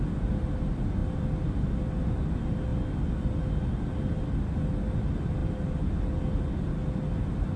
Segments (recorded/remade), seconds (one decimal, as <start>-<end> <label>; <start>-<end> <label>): 0.0-7.6 recorded